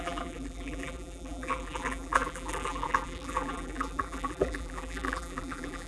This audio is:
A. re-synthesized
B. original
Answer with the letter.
A